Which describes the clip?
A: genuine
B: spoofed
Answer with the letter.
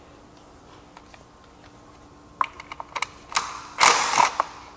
A